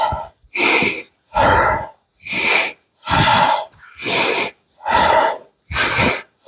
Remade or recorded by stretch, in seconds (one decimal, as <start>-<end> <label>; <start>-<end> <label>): 0.0-6.5 recorded